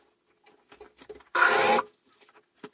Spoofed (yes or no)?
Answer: no